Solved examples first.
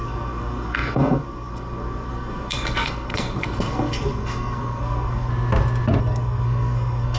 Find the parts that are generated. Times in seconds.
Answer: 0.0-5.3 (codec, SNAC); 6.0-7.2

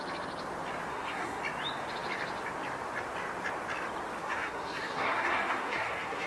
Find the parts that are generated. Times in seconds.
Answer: 0.9-1.4 (codec, SNAC); 4.2-6.3

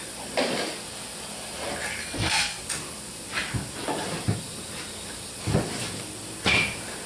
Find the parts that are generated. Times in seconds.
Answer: 2.0-2.6 (codec, SNAC)

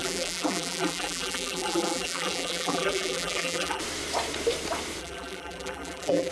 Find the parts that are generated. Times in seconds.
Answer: 0.0-3.8 (vocoder, BigVGAN v2); 5.0-6.3

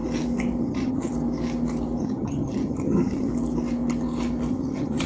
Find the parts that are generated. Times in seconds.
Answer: 0.6-1.1 (vocoder, HiFi-GAN); 2.0-3.3; 4.5-5.1

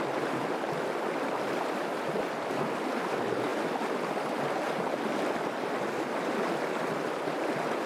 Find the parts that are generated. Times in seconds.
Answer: none

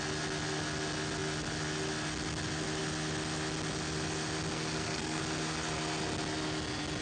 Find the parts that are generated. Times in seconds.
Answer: 4.5-5.2 (codec, SNAC)